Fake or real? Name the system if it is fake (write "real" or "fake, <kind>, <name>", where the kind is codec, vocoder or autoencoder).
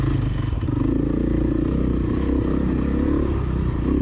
real